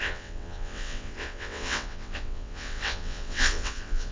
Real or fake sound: fake